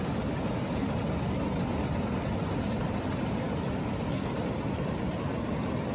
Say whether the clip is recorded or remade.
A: recorded